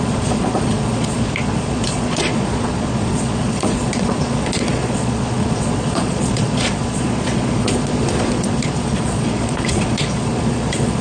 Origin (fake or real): fake